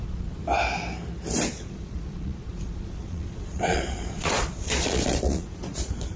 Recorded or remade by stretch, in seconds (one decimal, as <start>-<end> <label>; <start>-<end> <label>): 0.0-0.4 remade; 0.4-1.5 recorded; 1.5-6.2 remade